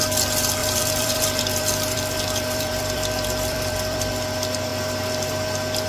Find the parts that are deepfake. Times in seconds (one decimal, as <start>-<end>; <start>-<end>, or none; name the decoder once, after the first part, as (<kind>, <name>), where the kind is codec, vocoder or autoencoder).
0.6-4.1 (vocoder, BigVGAN v2)